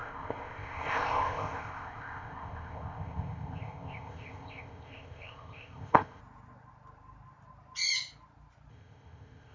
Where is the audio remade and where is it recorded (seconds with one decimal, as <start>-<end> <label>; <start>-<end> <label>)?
0.0-6.2 remade; 6.2-8.7 recorded; 8.7-9.5 remade

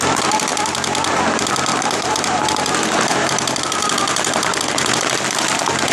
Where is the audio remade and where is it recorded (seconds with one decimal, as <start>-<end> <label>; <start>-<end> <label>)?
0.0-1.7 recorded; 1.7-5.2 remade; 5.2-5.9 recorded